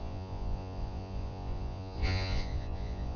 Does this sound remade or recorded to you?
remade